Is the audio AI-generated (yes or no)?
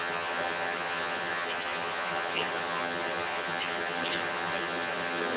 yes